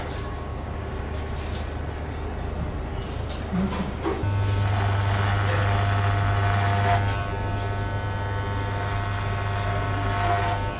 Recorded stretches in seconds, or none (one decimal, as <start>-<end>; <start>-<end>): 0.0-0.5; 1.2-10.8